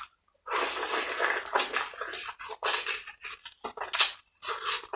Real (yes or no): yes